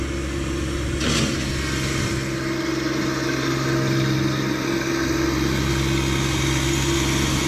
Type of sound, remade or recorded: recorded